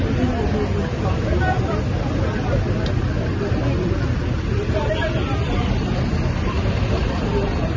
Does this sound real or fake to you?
real